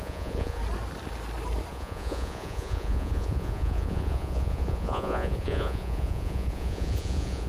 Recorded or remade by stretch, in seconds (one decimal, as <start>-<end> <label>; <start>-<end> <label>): 0.0-0.6 remade; 0.6-1.7 recorded; 1.7-7.5 remade